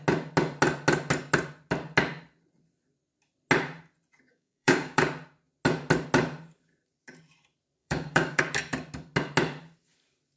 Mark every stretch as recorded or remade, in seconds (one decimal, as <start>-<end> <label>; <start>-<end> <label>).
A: 0.0-4.3 recorded; 4.3-5.0 remade; 5.0-7.8 recorded; 7.8-8.4 remade; 8.4-10.4 recorded